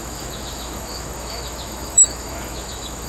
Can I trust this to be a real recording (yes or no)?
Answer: no